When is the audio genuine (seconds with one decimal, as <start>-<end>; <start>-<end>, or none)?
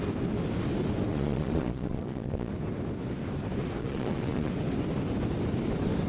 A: 0.0-1.1; 2.5-3.8; 4.5-6.1